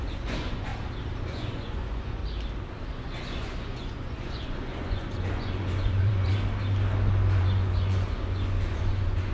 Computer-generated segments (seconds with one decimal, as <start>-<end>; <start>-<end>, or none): 0.0-0.7; 1.2-2.2; 2.9-6.3; 7.4-9.3